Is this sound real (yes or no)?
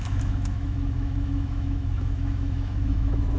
no